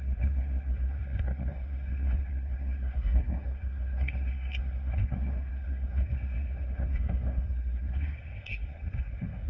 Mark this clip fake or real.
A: fake